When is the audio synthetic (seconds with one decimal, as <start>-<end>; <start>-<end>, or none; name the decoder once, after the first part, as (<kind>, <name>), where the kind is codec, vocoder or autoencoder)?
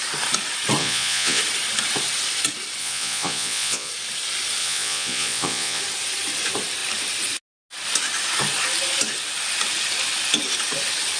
0.8-1.4 (vocoder, Vocos); 2.8-3.9; 4.6-5.8